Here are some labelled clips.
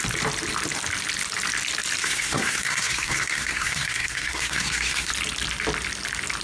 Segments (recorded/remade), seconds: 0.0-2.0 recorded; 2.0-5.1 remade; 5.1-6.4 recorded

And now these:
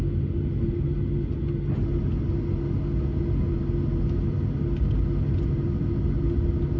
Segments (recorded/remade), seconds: 0.0-6.8 recorded

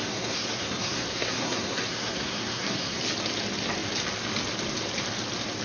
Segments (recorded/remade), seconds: 0.0-3.0 remade; 3.0-5.6 recorded

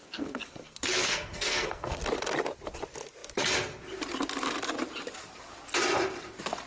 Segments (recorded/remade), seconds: 0.0-2.0 remade; 2.0-6.7 recorded

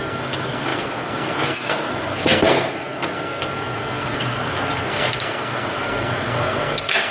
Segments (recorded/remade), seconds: 0.0-7.1 remade

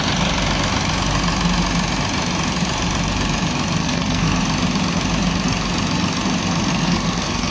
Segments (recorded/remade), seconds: 0.0-3.8 recorded; 3.8-4.4 remade; 4.4-6.7 recorded; 6.7-7.5 remade

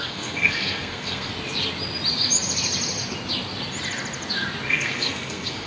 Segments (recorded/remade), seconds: 0.0-1.3 remade; 1.3-4.7 recorded; 4.7-5.7 remade